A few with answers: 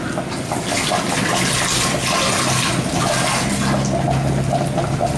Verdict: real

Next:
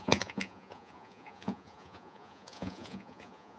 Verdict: fake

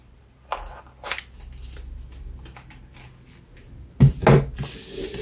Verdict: real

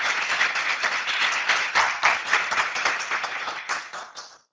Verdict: real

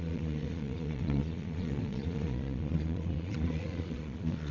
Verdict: fake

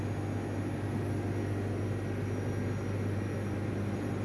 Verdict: real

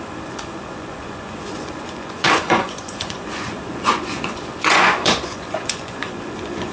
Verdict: fake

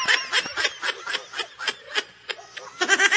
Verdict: real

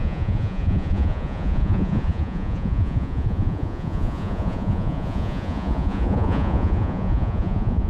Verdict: fake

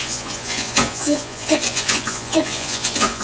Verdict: fake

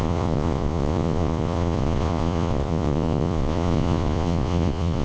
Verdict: fake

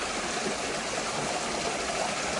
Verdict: real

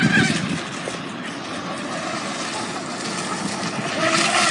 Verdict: real